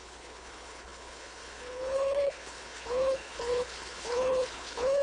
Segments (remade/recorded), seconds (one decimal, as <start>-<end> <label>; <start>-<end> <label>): 0.0-5.0 remade

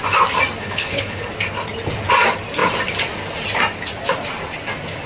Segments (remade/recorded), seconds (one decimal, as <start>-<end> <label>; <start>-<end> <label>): 0.0-0.6 recorded; 0.6-1.3 remade; 1.3-5.1 recorded

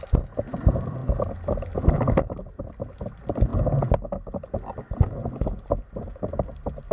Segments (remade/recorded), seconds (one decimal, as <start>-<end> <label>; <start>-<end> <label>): 0.0-6.9 recorded

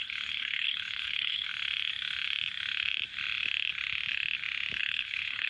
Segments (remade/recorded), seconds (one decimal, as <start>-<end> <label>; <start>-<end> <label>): 0.0-1.5 remade; 1.5-4.8 recorded; 4.8-5.5 remade

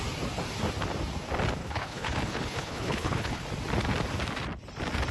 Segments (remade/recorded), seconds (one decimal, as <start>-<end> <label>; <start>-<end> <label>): 0.0-1.6 recorded; 1.6-3.4 remade; 3.4-5.1 recorded

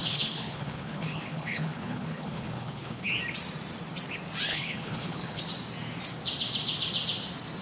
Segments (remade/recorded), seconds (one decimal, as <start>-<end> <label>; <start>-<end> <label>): 0.0-3.1 remade; 3.1-4.5 recorded; 4.5-5.4 remade; 5.4-7.6 recorded

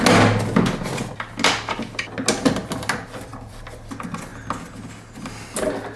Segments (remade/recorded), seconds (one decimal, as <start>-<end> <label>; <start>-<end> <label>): 0.0-6.0 recorded